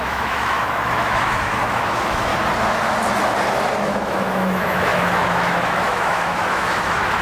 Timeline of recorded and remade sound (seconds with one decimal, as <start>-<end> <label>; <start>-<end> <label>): 0.0-2.3 remade; 2.3-3.8 recorded; 3.8-7.2 remade